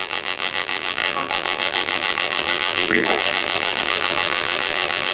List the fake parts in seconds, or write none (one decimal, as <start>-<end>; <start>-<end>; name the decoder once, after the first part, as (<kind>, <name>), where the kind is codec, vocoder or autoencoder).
0.0-5.1 (vocoder, BigVGAN v2)